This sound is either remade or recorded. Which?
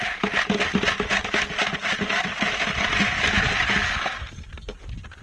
recorded